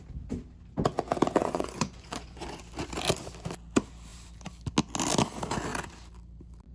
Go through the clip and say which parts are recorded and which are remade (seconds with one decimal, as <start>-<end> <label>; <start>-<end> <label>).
0.0-1.4 recorded; 1.4-2.6 remade; 2.6-6.7 recorded